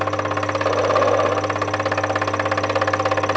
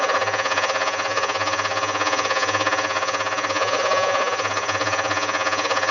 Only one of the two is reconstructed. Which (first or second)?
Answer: second